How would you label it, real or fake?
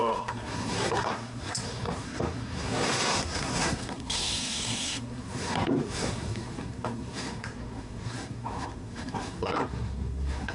fake